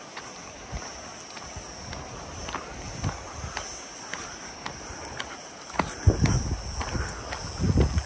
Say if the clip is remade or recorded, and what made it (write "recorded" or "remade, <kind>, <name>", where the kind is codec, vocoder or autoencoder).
recorded